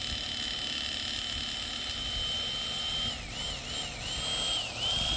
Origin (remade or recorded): recorded